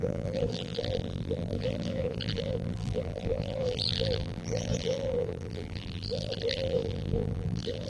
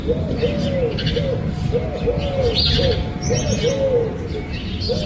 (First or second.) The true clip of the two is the second